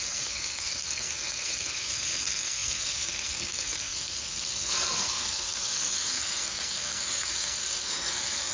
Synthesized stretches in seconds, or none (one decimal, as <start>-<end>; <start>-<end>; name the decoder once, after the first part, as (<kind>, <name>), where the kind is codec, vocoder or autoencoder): 0.0-8.5 (codec, SNAC)